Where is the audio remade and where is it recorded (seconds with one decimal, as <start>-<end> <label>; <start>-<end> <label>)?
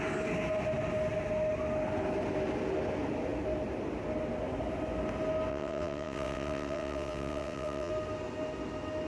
0.0-5.5 recorded; 5.5-7.9 remade; 7.9-9.1 recorded